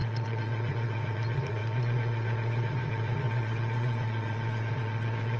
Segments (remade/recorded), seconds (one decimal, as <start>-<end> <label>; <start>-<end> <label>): 0.0-5.4 remade